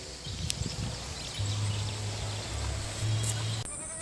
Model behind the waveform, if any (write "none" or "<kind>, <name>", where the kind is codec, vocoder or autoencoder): none